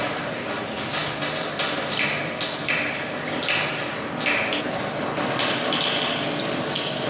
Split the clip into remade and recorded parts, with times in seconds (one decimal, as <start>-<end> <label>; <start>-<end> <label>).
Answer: 0.0-7.1 recorded